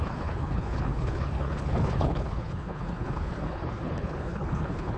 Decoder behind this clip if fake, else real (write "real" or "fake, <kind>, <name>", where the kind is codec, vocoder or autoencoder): fake, codec, HILCodec